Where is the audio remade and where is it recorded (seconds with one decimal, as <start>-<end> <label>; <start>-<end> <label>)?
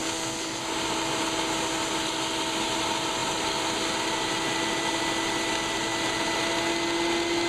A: 0.0-0.6 remade; 0.6-7.5 recorded